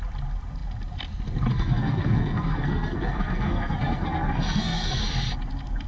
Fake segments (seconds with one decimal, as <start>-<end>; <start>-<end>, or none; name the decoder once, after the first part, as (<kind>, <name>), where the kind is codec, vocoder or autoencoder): 1.5-5.0 (codec, SNAC)